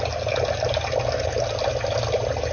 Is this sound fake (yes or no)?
no